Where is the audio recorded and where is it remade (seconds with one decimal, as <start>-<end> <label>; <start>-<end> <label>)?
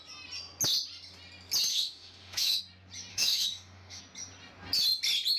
0.0-1.7 recorded; 1.7-2.6 remade; 2.6-3.1 recorded; 3.1-4.0 remade; 4.0-5.4 recorded